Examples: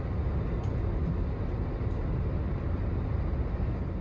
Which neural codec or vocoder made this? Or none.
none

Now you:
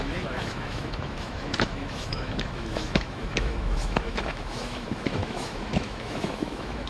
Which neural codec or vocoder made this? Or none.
autoencoder, DAC-VAE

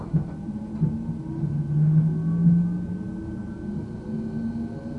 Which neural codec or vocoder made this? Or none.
none